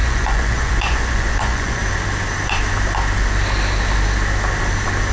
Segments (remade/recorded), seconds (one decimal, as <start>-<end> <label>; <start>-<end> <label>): 0.0-1.8 remade; 1.8-5.1 recorded